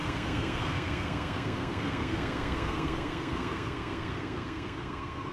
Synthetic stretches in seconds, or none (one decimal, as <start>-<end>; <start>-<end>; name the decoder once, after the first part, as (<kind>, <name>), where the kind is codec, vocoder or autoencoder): 0.0-5.3 (codec, SNAC)